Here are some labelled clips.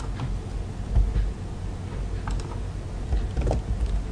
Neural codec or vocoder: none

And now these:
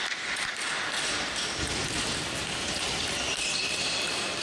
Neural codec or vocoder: vocoder, BigVGAN v2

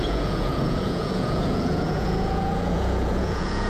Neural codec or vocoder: vocoder, Vocos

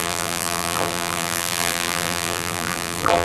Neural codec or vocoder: vocoder, BigVGAN v2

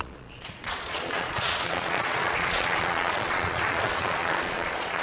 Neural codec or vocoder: vocoder, Vocos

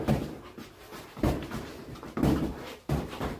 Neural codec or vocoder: vocoder, BigVGAN v2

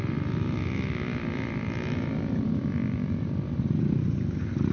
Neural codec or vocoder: none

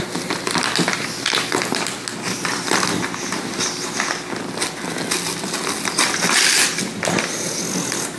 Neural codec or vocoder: none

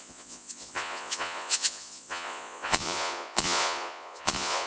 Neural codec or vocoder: vocoder, Vocos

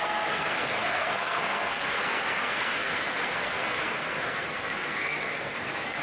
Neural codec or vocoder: codec, SNAC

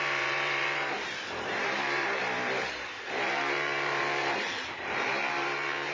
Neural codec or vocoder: vocoder, BigVGAN v2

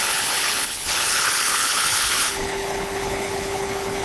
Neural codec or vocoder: codec, HILCodec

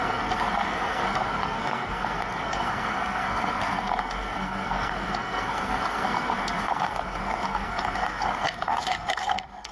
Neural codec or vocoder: codec, SNAC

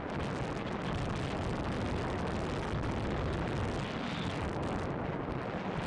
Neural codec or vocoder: none